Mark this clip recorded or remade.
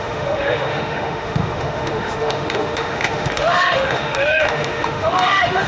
remade